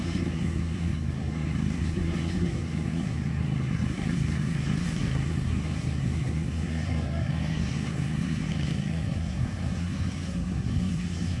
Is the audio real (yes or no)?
no